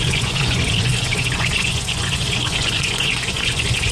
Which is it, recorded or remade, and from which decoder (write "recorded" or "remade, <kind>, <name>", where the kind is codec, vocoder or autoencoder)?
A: remade, vocoder, Vocos